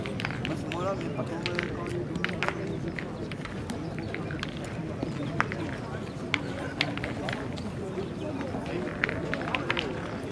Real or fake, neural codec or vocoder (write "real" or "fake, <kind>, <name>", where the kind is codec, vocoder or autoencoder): real